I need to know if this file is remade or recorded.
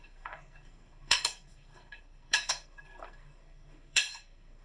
remade